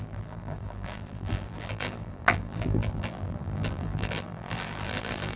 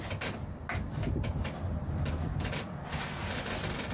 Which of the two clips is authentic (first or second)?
second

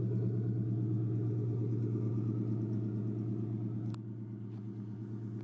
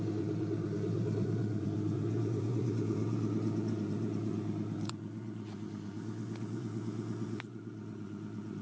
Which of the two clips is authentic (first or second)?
first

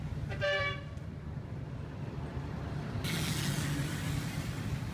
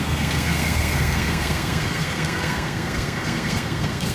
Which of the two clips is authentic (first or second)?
first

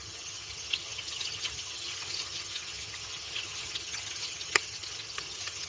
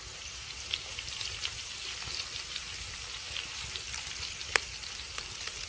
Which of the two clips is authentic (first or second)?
second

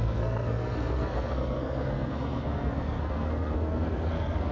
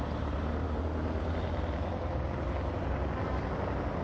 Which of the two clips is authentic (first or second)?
second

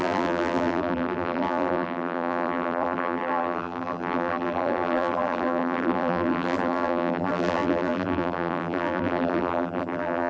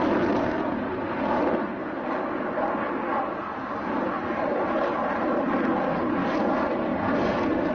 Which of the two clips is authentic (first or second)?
second